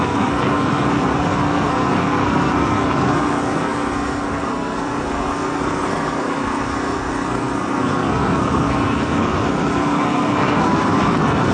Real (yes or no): no